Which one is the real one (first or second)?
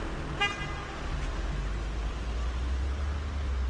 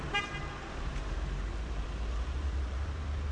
first